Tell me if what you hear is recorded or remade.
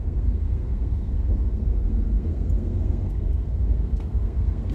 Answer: remade